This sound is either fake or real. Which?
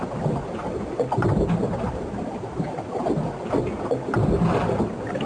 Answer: real